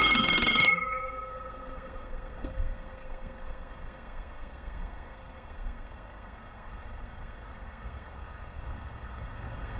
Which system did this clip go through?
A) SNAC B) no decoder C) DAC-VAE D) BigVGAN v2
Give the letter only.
A